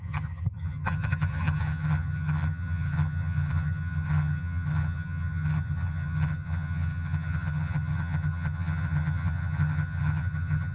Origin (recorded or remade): remade